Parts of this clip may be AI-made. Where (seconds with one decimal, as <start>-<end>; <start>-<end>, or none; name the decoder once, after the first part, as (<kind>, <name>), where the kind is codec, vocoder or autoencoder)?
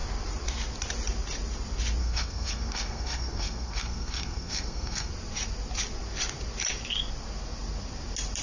2.0-5.1 (codec, SNAC)